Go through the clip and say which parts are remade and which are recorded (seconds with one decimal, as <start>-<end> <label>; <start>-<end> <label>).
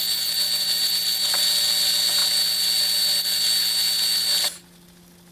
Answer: 0.0-5.3 recorded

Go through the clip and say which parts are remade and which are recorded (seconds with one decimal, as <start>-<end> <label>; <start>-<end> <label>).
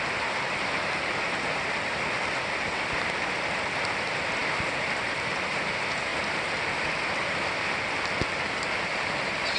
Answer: 0.0-9.6 recorded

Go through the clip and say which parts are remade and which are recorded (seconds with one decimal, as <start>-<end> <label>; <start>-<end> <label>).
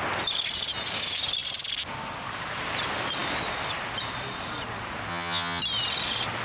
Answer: 0.0-5.1 recorded; 5.1-5.6 remade; 5.6-6.4 recorded